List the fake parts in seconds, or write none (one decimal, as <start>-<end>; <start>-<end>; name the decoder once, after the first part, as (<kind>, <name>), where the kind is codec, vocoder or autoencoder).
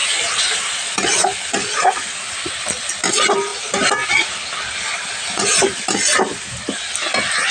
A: none